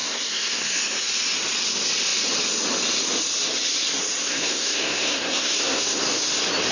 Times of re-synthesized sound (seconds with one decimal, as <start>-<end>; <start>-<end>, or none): 0.0-0.8; 4.2-6.0